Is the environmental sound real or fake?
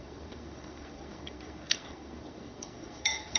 fake